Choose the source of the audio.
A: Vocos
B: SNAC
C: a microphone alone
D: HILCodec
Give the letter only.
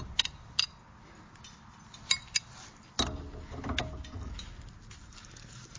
C